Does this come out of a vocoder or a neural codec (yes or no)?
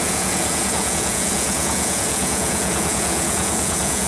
yes